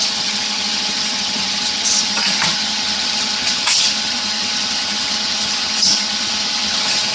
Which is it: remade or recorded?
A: remade